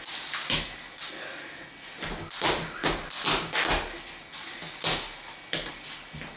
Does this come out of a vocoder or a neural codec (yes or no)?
no